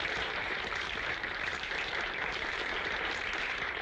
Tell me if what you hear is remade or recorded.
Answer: remade